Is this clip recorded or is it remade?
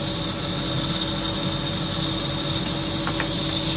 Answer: recorded